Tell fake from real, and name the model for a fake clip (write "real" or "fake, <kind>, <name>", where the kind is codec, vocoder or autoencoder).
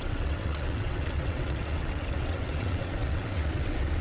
fake, vocoder, WaveNeXt